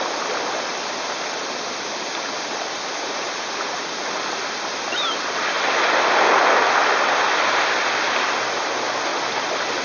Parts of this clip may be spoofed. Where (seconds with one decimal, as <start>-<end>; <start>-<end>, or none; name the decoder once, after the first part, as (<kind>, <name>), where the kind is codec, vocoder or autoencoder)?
3.0-3.9 (vocoder, Vocos)